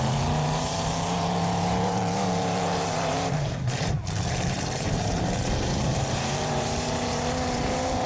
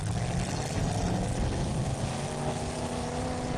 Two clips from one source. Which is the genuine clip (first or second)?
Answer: second